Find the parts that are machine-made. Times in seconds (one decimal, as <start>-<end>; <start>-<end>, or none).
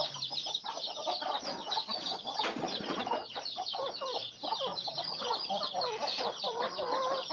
0.7-3.8; 4.7-5.5